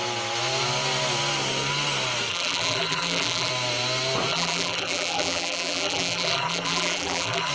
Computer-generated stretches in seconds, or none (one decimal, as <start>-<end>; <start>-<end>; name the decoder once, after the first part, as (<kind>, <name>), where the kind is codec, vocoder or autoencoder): 2.3-3.5 (vocoder, BigVGAN v2); 4.3-7.5